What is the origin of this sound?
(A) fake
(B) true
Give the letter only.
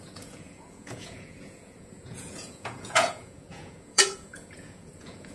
A